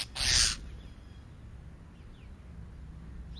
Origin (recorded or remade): recorded